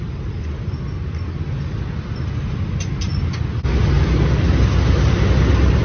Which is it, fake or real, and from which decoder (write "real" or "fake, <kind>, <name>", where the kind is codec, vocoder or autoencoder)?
real